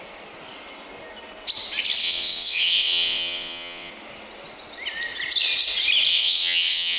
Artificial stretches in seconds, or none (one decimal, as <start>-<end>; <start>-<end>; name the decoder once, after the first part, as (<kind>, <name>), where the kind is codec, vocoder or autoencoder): 2.0-3.9 (vocoder, WaveNeXt); 6.1-7.0